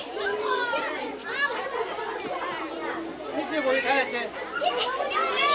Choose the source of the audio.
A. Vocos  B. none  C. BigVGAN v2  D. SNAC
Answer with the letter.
B